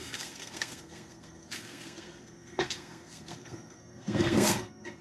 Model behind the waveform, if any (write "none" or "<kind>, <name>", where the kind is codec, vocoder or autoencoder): codec, SNAC